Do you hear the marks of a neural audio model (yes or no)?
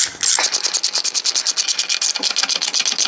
no